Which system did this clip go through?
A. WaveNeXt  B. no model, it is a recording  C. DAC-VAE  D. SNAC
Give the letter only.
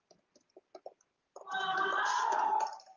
B